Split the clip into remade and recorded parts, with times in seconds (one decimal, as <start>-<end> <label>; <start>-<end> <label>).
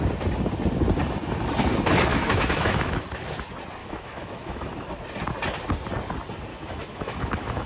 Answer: 0.0-2.1 recorded; 2.1-2.9 remade; 2.9-3.8 recorded; 3.8-4.9 remade; 4.9-6.5 recorded; 6.5-7.7 remade